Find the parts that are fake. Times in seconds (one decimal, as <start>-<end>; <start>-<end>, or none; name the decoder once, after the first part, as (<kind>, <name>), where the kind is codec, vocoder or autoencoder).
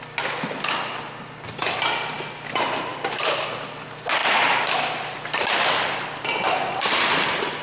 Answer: none